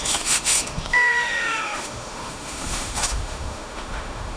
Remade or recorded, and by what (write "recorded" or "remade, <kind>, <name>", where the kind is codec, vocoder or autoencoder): remade, autoencoder, DAC-VAE